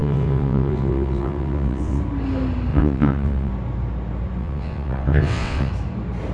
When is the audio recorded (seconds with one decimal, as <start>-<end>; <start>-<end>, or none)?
2.0-2.7; 3.5-4.4; 5.7-6.3